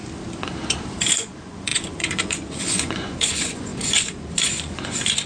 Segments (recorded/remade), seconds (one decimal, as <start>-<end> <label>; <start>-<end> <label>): 0.0-1.1 recorded; 1.1-5.3 remade